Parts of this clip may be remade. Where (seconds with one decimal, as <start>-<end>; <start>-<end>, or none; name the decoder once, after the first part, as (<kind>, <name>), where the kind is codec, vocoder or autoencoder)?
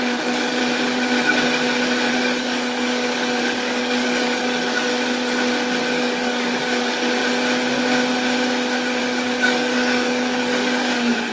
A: 0.0-0.6 (codec, DAC); 2.1-4.9; 5.8-7.2; 9.0-11.3